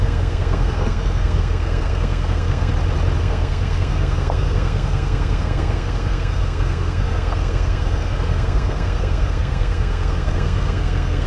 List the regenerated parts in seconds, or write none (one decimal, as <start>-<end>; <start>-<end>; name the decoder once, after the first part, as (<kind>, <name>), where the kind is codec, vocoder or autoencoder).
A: 0.0-2.7 (codec, SNAC); 3.2-11.3

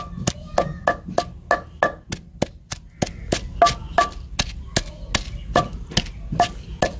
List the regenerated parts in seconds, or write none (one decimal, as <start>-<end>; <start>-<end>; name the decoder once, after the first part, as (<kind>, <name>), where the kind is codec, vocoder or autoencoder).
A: none

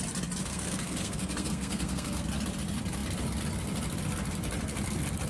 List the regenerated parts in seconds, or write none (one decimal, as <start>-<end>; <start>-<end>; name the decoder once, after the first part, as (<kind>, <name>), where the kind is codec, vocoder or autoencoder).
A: 0.4-2.2 (codec, SNAC)

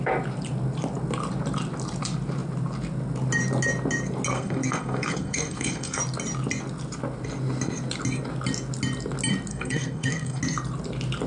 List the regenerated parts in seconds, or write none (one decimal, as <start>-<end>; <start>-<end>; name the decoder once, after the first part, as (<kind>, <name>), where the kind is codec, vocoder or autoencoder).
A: 4.3-6.0 (codec, SNAC); 9.5-10.4

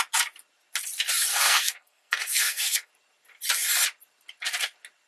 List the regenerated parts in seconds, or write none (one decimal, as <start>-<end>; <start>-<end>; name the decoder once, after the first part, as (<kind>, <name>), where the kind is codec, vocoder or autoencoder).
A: 1.3-2.9 (codec, SNAC)

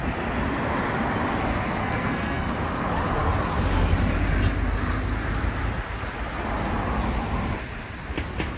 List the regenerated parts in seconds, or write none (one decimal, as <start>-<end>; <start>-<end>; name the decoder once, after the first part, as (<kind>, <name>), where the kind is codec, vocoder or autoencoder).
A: 1.8-2.5 (codec, SNAC)

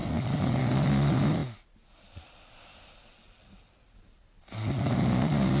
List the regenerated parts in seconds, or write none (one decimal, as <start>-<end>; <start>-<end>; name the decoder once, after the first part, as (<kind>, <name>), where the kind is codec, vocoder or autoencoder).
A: none